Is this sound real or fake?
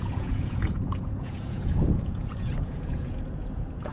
fake